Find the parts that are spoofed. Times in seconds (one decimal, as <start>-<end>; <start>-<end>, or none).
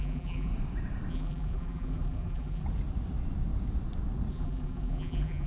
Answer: 0.0-0.5; 1.1-2.6; 4.3-5.5